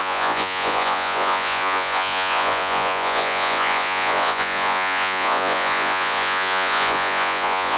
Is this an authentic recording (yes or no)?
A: no